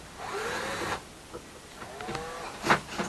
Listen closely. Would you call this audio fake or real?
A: real